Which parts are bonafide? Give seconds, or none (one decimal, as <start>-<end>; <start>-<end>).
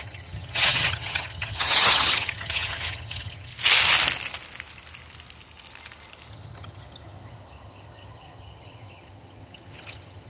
3.5-6.3